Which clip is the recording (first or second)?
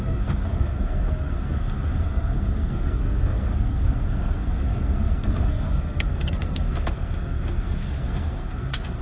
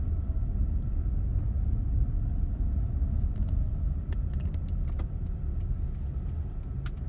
second